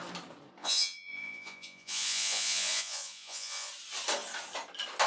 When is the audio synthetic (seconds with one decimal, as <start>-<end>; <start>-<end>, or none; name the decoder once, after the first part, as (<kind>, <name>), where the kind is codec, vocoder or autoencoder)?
0.6-3.7 (vocoder, Vocos)